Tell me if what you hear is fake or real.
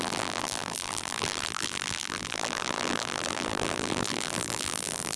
fake